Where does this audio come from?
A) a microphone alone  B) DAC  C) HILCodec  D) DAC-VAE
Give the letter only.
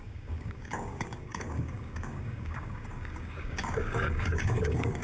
B